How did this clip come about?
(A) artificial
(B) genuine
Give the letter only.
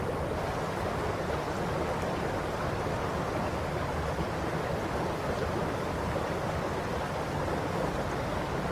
B